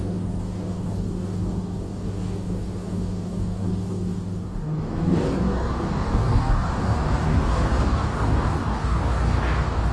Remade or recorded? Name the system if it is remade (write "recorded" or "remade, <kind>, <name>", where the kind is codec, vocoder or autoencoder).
remade, codec, DAC